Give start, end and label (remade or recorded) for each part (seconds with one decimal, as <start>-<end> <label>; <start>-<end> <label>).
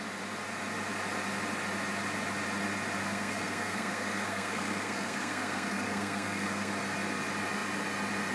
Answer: 0.0-3.0 recorded; 3.0-6.7 remade; 6.7-8.3 recorded